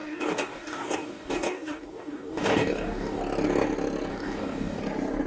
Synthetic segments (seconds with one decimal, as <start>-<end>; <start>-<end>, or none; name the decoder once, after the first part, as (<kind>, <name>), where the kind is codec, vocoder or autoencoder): 0.0-3.2 (codec, DAC); 4.1-4.8